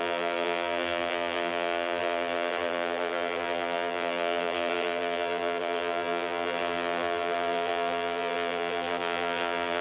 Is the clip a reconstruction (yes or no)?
yes